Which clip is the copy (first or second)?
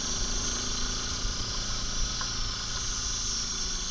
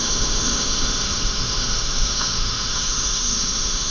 second